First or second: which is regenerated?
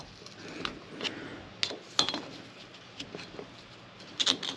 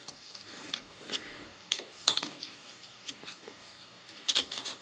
second